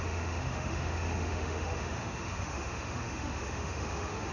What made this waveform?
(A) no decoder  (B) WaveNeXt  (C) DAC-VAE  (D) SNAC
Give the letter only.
C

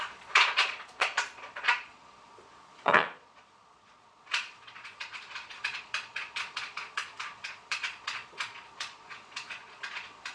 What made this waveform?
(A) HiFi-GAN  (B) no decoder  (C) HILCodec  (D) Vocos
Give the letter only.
D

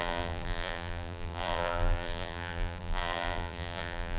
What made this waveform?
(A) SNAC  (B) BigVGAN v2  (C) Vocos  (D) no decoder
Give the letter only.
B